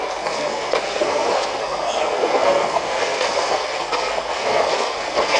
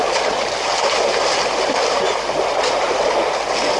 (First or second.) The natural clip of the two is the second